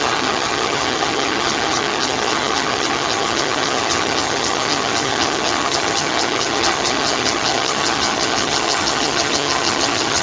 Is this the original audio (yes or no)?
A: no